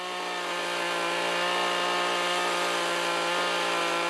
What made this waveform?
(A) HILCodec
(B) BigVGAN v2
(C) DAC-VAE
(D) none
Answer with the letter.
D